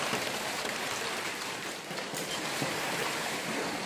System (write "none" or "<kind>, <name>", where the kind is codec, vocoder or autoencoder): vocoder, BigVGAN v2